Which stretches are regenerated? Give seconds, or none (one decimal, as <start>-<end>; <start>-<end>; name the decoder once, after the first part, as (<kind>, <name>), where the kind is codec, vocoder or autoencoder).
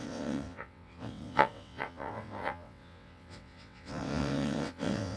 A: 0.0-5.2 (vocoder, WaveNeXt)